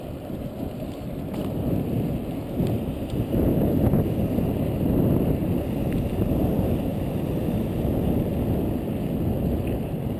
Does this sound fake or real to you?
real